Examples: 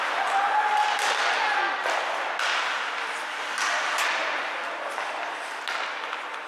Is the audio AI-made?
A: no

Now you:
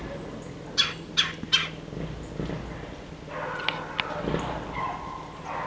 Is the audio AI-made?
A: no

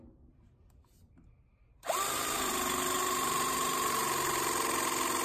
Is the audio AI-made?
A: no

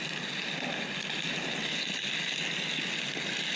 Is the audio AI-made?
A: no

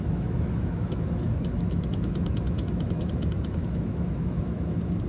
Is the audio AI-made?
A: yes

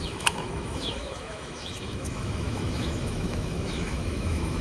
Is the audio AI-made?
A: yes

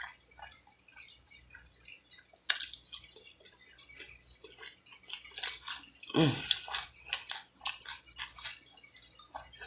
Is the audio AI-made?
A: no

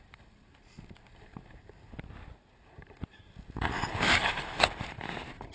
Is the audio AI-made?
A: no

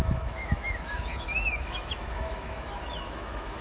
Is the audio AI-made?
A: yes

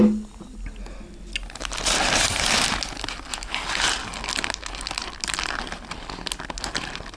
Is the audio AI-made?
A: no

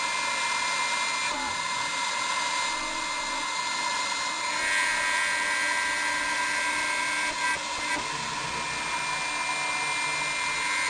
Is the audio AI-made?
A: no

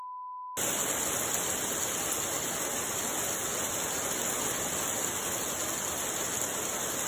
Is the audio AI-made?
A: no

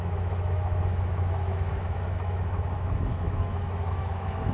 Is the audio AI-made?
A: yes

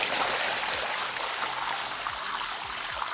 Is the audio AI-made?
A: no